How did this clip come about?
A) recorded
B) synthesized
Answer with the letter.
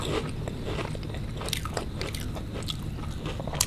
A